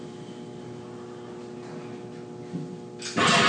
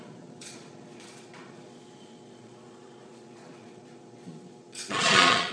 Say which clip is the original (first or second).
first